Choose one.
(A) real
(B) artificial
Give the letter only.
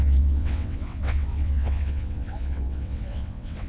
B